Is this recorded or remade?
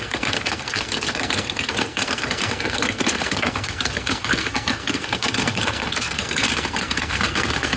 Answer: remade